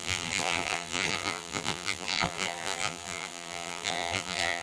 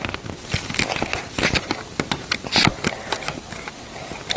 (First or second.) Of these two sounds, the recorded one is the second